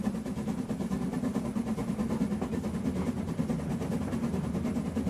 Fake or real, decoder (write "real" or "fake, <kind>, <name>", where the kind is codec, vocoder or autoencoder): real